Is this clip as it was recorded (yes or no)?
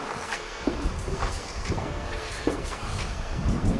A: no